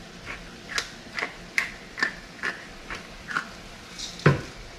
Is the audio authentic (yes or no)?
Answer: yes